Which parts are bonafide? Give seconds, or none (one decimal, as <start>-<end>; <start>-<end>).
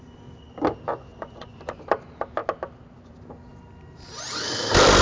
0.0-1.1; 1.8-5.0